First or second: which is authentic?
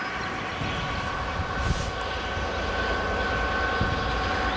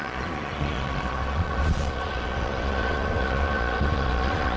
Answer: first